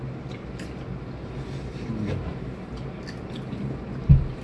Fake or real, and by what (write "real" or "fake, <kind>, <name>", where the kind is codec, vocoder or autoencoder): real